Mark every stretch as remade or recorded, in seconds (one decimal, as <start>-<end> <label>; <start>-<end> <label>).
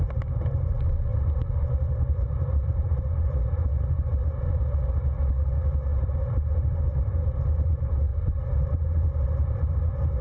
0.0-1.1 recorded; 1.1-3.4 remade; 3.4-5.9 recorded; 5.9-6.5 remade; 6.5-8.1 recorded; 8.1-9.0 remade; 9.0-10.2 recorded